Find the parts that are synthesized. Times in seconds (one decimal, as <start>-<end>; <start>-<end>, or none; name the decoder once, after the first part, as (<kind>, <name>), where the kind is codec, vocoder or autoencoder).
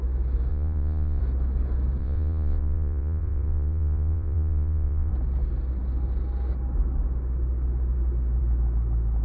0.5-1.2 (vocoder, Vocos); 2.0-5.1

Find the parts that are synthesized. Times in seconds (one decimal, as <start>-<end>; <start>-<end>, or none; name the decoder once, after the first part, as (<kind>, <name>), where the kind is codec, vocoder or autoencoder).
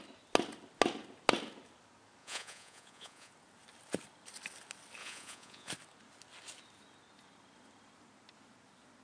2.2-3.3 (vocoder, Vocos); 5.0-5.7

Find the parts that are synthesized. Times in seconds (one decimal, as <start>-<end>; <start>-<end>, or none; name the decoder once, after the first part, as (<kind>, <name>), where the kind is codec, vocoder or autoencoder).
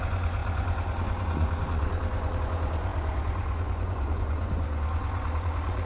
0.0-5.8 (vocoder, Vocos)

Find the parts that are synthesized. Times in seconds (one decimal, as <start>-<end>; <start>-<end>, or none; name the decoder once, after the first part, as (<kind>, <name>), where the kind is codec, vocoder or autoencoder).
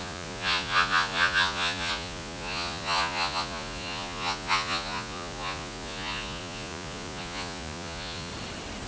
0.0-8.3 (vocoder, Vocos)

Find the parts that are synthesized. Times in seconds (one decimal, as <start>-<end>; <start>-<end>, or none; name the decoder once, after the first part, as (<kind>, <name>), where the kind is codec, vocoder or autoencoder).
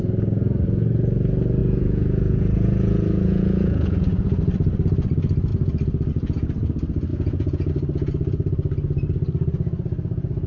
1.6-4.4 (vocoder, Vocos); 7.1-7.7